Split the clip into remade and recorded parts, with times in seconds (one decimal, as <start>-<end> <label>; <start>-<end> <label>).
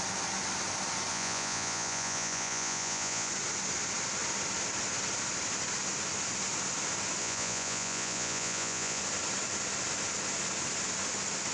0.0-1.1 recorded; 1.1-3.3 remade; 3.3-7.2 recorded; 7.2-9.0 remade; 9.0-11.5 recorded